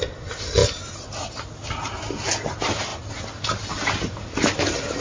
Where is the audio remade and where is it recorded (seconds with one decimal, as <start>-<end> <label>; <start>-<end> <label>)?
0.0-5.0 recorded